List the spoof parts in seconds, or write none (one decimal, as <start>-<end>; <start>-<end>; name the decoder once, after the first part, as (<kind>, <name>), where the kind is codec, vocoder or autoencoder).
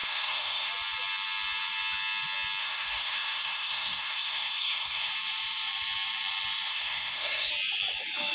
0.0-0.7 (codec, SNAC); 2.6-5.1; 6.7-7.5